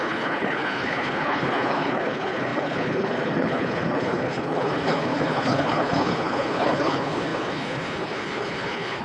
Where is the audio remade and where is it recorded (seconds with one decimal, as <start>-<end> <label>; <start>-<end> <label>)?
0.0-9.0 remade